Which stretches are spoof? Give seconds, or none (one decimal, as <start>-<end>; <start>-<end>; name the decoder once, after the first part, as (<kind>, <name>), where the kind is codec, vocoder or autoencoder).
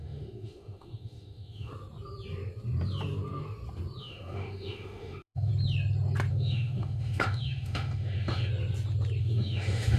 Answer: 0.0-1.7 (autoencoder, DAC-VAE); 4.0-5.5; 6.3-8.5; 9.2-10.0